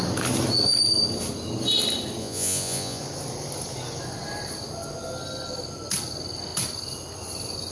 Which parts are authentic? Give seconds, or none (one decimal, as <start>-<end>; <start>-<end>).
0.0-2.2; 3.0-7.7